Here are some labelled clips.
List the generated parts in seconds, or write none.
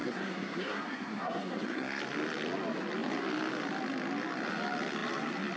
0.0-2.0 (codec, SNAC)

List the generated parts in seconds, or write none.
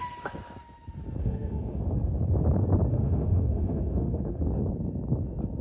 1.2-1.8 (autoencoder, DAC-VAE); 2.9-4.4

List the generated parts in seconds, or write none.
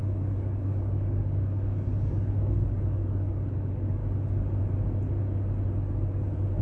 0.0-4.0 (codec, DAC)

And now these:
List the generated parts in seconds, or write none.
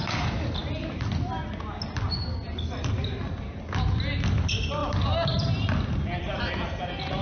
4.8-6.5 (vocoder, BigVGAN v2)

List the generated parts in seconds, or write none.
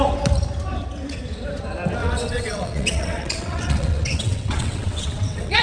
2.0-5.6 (vocoder, WaveNeXt)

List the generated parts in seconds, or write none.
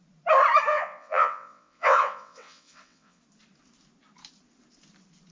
0.7-3.2 (vocoder, WaveNeXt)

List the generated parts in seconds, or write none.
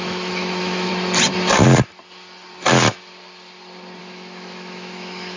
0.0-0.9 (autoencoder, DAC-VAE); 4.0-5.4